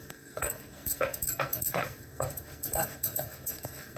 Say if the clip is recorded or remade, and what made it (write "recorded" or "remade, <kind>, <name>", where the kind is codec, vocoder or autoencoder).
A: remade, codec, SNAC